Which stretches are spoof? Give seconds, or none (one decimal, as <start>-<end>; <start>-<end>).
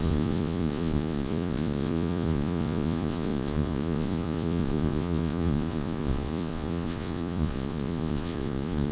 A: 0.0-8.9